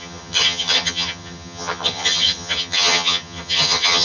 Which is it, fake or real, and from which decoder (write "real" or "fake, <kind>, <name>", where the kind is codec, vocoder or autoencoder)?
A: fake, vocoder, HiFi-GAN